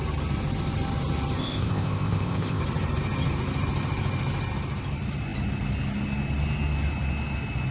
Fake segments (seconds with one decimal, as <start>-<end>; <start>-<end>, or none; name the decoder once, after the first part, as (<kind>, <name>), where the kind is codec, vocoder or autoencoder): 1.4-2.6 (codec, ZipCodec)